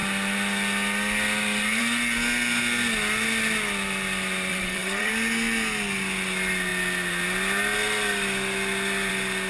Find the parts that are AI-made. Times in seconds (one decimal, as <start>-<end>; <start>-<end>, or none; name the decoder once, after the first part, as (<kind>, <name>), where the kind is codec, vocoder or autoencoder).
4.5-5.1 (vocoder, WaveNeXt)